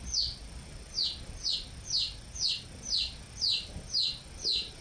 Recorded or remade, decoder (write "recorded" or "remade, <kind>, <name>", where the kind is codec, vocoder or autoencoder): recorded